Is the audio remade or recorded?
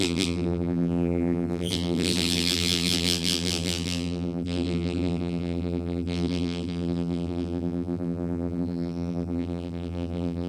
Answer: remade